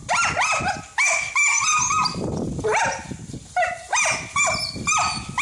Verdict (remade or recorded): recorded